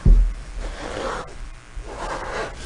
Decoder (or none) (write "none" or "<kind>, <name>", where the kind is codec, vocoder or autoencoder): none